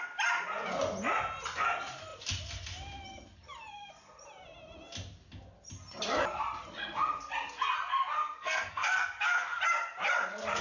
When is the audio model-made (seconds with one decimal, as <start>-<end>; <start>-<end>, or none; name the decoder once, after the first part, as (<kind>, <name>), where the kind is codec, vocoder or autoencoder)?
8.2-9.6 (codec, SNAC)